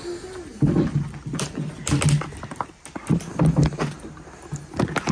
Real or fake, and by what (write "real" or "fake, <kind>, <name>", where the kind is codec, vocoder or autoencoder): real